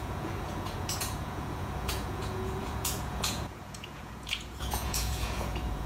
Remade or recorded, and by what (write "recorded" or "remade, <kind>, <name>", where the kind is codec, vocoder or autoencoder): remade, vocoder, Vocos